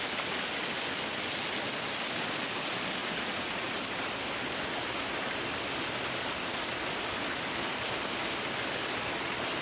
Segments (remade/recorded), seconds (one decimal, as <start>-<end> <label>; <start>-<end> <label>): 0.0-3.0 recorded; 3.0-3.7 remade; 3.7-9.6 recorded